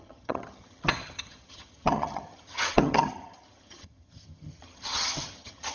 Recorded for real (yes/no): no